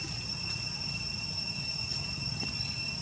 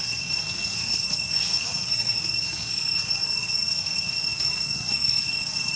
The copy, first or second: second